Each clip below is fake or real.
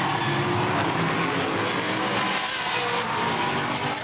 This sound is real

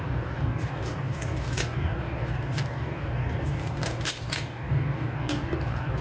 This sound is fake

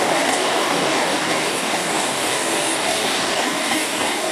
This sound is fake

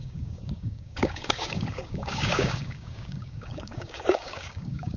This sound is fake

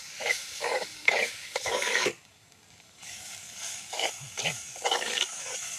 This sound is fake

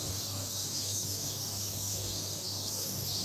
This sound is fake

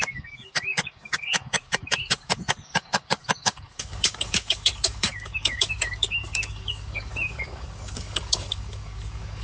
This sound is fake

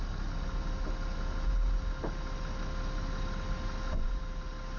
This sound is real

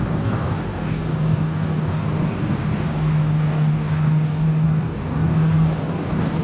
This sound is fake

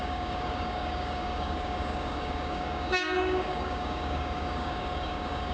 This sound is fake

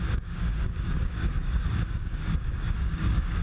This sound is fake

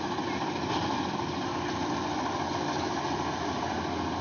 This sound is real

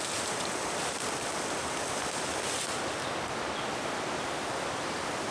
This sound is real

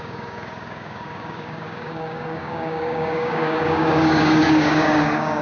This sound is fake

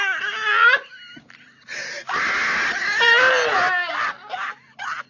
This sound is real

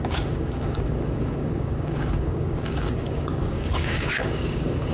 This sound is fake